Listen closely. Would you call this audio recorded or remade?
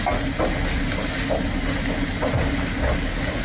recorded